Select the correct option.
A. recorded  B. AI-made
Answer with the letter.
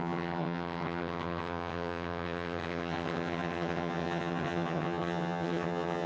B